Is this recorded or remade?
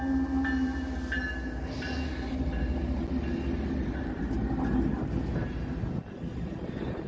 recorded